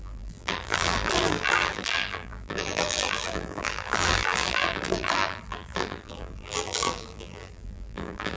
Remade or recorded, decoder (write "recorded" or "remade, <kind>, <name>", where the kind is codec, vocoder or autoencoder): remade, vocoder, BigVGAN v2